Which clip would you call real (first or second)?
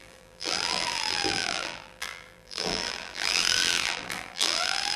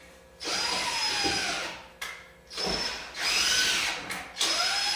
second